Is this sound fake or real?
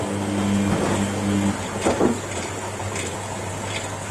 real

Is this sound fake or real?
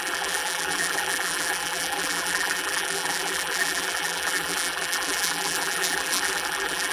fake